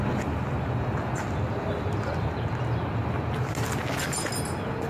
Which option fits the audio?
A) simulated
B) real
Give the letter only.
B